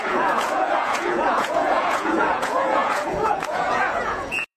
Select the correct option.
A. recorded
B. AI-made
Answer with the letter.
B